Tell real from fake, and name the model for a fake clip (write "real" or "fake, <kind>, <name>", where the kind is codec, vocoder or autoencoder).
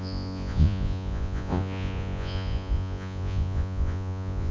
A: fake, vocoder, Vocos